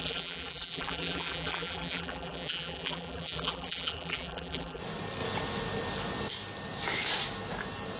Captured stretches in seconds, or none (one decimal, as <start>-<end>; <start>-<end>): 4.8-8.0